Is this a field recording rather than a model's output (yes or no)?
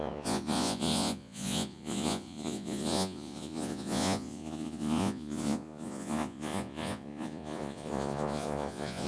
no